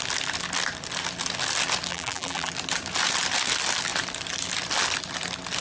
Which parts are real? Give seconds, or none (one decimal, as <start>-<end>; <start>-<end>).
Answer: 0.0-1.9; 2.5-5.6